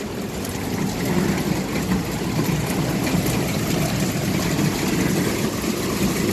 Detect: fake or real real